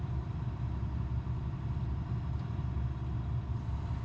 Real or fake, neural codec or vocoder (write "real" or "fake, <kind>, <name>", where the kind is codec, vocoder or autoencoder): real